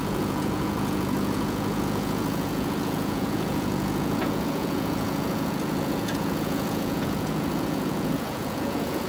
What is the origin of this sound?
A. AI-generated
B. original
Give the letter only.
A